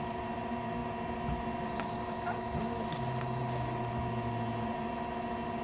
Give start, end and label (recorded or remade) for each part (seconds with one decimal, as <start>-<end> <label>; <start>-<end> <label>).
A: 0.0-5.6 recorded